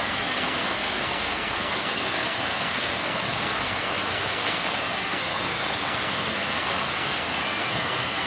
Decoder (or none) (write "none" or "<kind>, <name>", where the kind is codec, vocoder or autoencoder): codec, SNAC